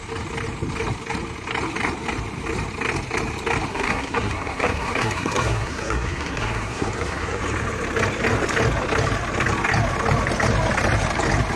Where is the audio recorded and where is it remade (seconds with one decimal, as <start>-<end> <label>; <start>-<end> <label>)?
0.0-3.7 recorded; 3.7-7.4 remade; 7.4-11.6 recorded